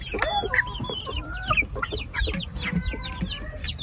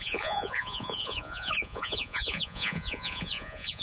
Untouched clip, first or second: first